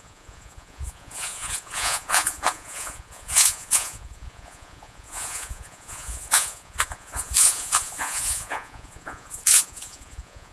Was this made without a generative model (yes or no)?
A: no